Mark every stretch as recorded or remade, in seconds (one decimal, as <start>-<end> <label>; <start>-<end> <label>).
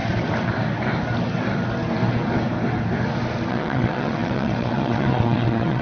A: 0.0-3.5 recorded; 3.5-5.8 remade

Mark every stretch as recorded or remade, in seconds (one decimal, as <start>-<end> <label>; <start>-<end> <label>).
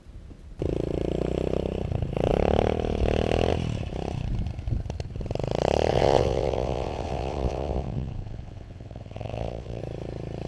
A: 0.0-5.9 recorded; 5.9-9.8 remade; 9.8-10.5 recorded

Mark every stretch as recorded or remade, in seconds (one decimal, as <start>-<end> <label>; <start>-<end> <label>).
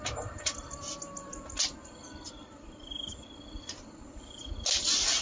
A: 0.0-5.2 recorded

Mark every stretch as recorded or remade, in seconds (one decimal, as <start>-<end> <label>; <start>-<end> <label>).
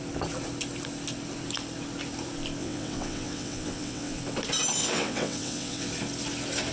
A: 0.0-2.6 recorded; 2.6-4.2 remade; 4.2-4.8 recorded; 4.8-5.9 remade; 5.9-6.7 recorded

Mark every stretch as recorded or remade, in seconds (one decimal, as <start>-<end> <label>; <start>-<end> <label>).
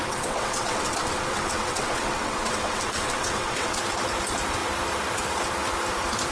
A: 0.0-3.8 remade; 3.8-6.3 recorded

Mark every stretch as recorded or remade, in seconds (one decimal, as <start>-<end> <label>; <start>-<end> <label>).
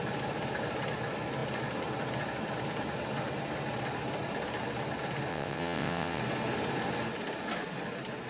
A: 0.0-5.3 recorded; 5.3-6.2 remade; 6.2-8.3 recorded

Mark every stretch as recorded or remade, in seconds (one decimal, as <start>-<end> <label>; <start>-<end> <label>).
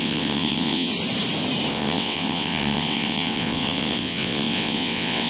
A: 0.0-0.9 remade; 0.9-1.7 recorded; 1.7-5.3 remade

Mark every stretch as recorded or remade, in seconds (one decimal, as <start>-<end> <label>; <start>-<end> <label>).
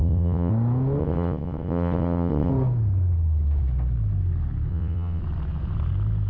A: 0.0-0.5 remade; 0.5-1.0 recorded; 1.0-2.5 remade; 2.5-4.7 recorded; 4.7-5.2 remade; 5.2-6.3 recorded